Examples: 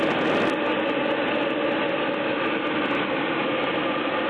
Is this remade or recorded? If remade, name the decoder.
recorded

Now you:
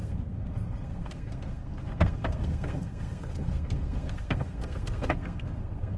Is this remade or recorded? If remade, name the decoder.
remade, codec, SNAC